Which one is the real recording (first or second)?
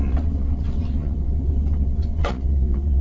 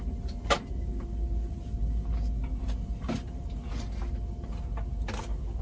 second